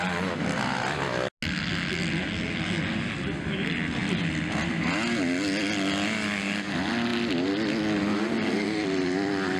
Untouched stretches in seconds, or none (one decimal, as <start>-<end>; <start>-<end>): 0.0-9.6